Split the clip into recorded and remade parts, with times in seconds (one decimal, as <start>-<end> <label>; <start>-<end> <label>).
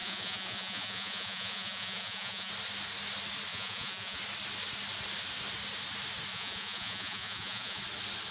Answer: 0.0-2.5 remade; 2.5-3.5 recorded; 3.5-4.2 remade; 4.2-6.3 recorded; 6.3-7.8 remade; 7.8-8.3 recorded